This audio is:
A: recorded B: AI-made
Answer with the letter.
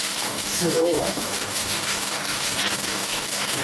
B